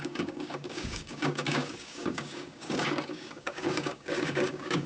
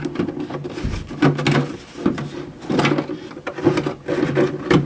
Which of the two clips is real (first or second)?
second